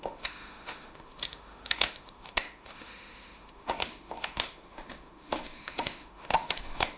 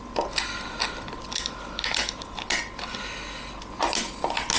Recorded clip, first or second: second